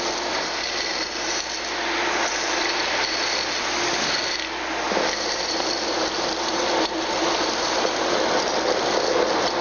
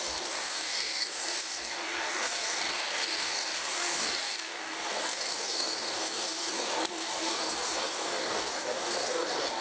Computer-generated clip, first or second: second